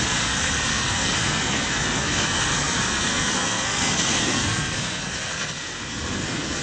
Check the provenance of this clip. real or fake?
fake